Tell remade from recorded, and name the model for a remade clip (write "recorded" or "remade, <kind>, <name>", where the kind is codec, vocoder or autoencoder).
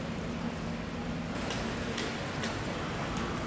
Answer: recorded